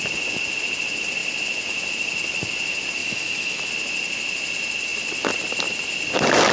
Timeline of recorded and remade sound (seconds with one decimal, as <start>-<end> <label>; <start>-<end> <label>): 0.0-3.0 recorded; 3.0-3.7 remade; 3.7-6.5 recorded